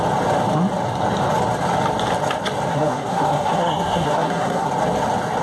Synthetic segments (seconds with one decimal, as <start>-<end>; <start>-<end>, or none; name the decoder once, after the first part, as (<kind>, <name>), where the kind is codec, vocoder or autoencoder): 2.7-4.7 (codec, SNAC)